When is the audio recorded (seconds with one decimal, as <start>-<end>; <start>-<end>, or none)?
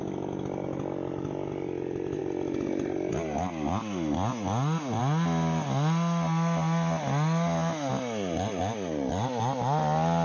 0.0-10.2